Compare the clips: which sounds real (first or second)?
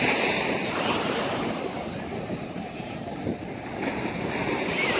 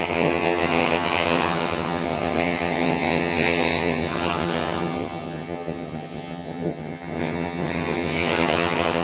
first